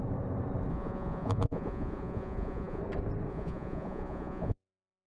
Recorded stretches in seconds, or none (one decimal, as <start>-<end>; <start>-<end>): 0.0-0.7; 2.8-3.3